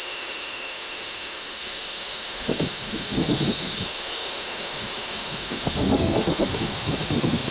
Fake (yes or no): yes